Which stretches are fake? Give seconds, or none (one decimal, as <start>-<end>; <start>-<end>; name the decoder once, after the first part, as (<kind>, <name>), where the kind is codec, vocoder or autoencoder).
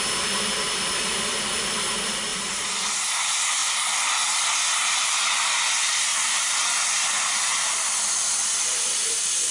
0.0-2.3 (vocoder, BigVGAN v2); 3.0-9.5